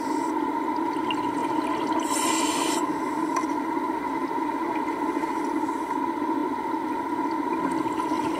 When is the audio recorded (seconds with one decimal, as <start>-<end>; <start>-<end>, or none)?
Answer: 0.0-3.2; 4.6-8.4